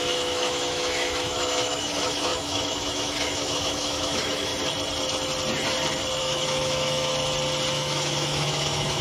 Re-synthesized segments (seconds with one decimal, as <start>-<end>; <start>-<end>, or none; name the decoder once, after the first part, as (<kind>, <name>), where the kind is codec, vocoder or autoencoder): 0.0-4.5 (autoencoder, DAC-VAE); 6.2-7.1; 7.7-9.0